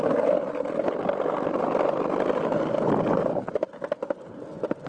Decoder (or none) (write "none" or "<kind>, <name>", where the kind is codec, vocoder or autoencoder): none